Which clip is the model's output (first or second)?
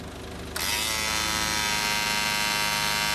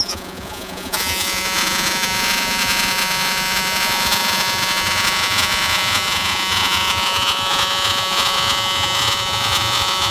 second